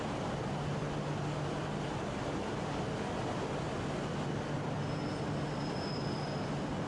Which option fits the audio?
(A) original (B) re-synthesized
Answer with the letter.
A